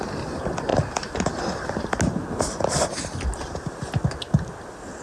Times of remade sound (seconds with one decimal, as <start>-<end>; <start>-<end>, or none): none